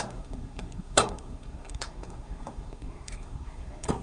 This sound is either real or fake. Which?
fake